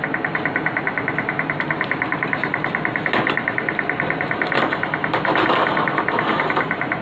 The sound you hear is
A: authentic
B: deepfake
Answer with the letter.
A